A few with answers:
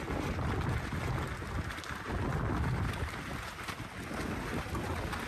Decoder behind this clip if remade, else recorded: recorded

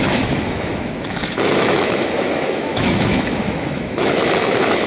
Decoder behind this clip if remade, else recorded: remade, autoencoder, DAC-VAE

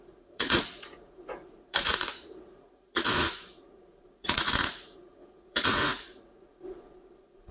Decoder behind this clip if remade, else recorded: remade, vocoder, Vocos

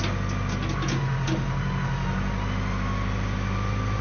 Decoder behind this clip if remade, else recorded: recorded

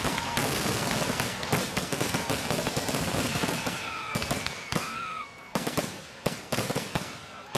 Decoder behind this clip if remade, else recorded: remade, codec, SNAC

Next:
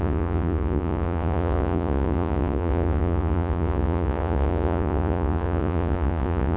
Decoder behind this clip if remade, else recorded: remade, vocoder, Vocos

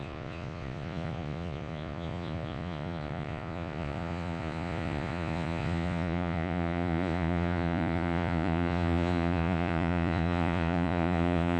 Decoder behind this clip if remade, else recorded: remade, vocoder, Vocos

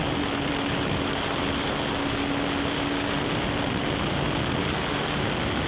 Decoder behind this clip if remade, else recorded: recorded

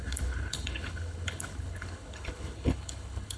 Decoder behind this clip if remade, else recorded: remade, codec, HILCodec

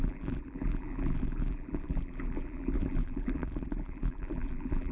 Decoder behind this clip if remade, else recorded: remade, vocoder, BigVGAN v2